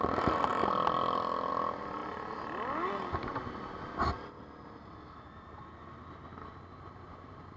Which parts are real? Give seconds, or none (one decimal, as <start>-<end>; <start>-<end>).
0.0-7.6